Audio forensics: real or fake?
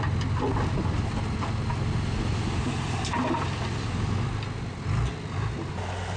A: real